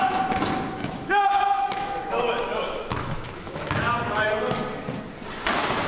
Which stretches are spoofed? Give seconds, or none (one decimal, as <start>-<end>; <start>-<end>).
0.8-4.3